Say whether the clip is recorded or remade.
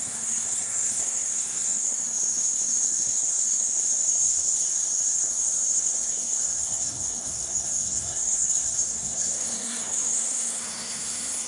remade